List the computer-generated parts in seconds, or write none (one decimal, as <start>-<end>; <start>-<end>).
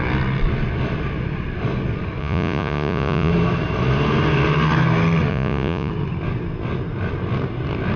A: 2.2-3.3; 5.3-5.9